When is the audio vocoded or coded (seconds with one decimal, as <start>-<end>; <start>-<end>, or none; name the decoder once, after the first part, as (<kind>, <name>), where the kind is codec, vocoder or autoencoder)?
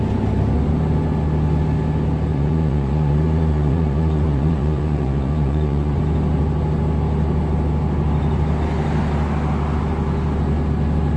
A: 2.3-6.0 (vocoder, Vocos)